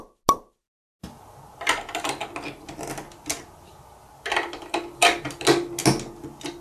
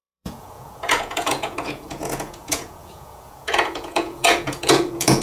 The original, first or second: first